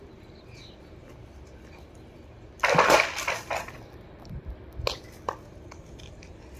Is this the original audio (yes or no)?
yes